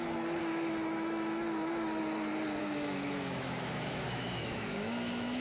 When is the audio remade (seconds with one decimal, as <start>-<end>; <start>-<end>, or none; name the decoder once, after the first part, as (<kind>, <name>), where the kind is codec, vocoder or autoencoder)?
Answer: 0.4-2.0 (autoencoder, DAC-VAE); 2.6-5.4